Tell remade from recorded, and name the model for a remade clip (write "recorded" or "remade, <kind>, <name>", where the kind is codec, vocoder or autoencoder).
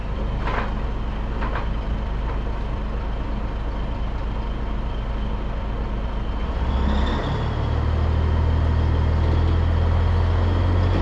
recorded